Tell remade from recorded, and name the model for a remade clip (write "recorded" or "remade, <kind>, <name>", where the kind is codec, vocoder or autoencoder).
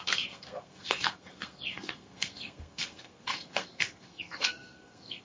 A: remade, codec, SNAC